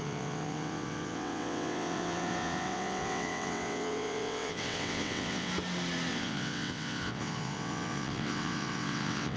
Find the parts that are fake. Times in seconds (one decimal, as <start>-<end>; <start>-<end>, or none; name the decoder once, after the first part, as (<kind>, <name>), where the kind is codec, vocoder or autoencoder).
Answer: 0.0-5.5 (vocoder, WaveNeXt); 6.1-9.4